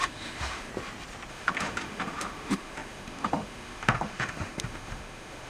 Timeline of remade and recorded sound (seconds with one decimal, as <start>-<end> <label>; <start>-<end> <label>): 0.0-0.7 remade; 0.7-1.3 recorded; 1.3-5.5 remade